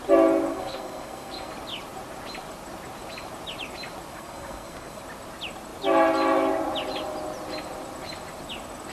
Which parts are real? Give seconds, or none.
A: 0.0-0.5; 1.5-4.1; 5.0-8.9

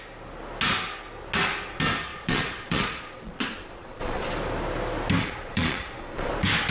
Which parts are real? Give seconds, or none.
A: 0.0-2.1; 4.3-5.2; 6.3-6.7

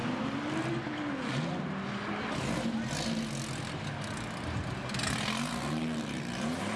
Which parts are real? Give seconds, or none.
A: 0.0-6.8